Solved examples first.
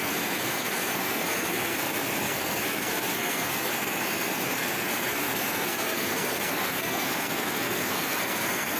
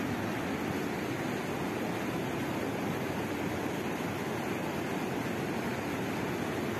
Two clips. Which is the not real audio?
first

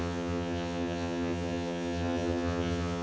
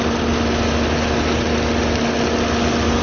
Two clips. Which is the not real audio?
first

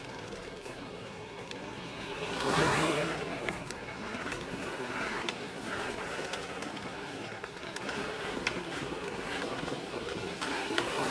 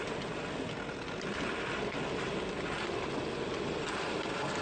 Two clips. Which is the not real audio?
first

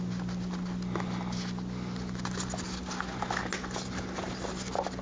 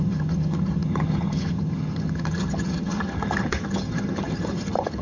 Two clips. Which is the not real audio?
second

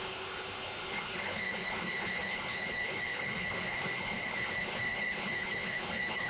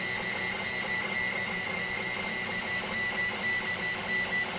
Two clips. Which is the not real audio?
first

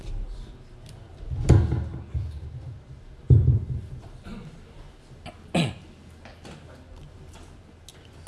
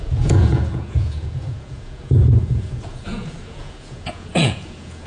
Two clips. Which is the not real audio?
second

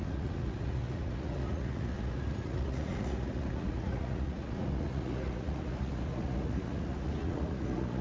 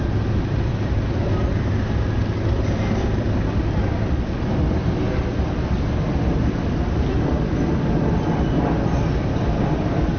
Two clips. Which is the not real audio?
first